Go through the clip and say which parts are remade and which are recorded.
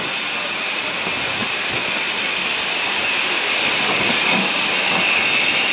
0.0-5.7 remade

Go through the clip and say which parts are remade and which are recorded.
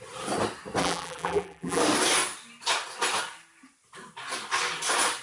0.0-0.8 recorded; 0.8-1.8 remade; 1.8-5.2 recorded